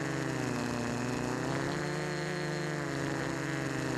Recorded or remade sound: recorded